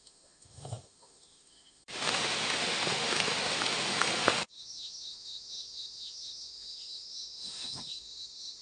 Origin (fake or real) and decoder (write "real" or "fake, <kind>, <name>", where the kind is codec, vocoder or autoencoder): fake, autoencoder, DAC-VAE